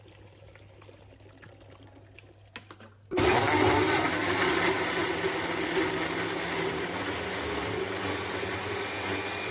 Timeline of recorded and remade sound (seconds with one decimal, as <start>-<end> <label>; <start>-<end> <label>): 0.0-9.5 recorded